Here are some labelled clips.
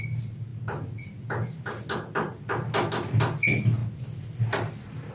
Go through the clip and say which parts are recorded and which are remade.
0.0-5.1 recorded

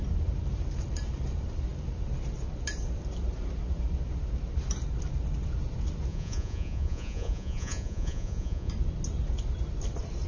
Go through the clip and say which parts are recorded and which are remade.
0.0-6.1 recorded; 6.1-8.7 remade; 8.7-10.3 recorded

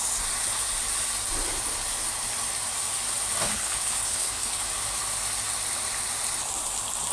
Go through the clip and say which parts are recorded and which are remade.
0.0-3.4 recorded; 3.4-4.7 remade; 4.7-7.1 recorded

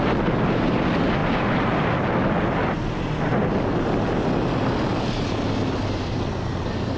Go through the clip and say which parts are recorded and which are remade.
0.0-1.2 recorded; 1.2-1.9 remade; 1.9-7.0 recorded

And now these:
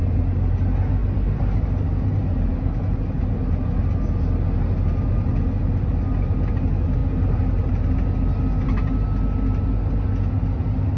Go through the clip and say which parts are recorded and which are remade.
0.0-1.0 recorded; 1.0-1.6 remade; 1.6-2.5 recorded; 2.5-3.0 remade; 3.0-11.0 recorded